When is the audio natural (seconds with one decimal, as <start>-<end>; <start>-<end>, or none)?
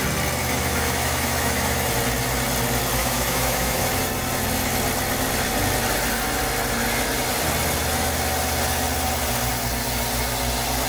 0.0-0.4; 1.9-3.0; 4.0-10.9